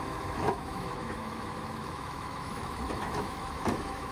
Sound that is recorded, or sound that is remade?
remade